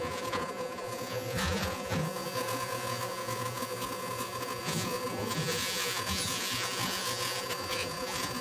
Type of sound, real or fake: fake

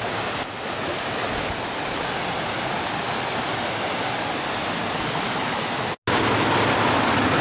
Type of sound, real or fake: real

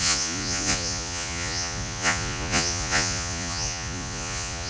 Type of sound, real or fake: fake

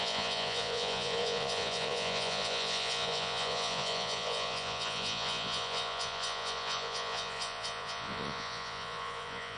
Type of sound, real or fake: fake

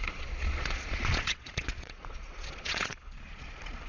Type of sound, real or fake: fake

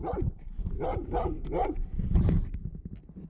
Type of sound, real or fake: real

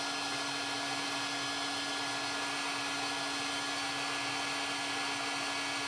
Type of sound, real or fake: real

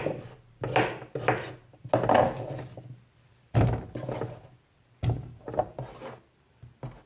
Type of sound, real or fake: real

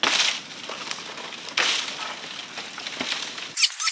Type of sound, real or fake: real